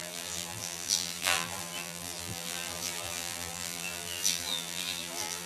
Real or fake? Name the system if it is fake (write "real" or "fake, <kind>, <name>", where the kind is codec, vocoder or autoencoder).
fake, vocoder, BigVGAN v2